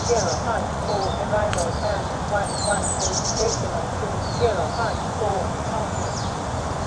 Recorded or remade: remade